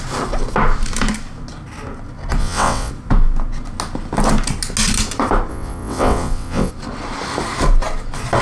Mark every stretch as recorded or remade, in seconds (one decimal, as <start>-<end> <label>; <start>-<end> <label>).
0.0-2.4 recorded; 2.4-2.9 remade; 2.9-5.5 recorded; 5.5-6.7 remade; 6.7-8.4 recorded